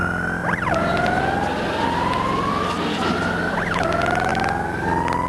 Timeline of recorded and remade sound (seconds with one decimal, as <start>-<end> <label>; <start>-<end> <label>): 0.0-0.4 recorded; 0.4-1.2 remade; 1.2-1.7 recorded; 1.7-2.5 remade; 2.5-5.3 recorded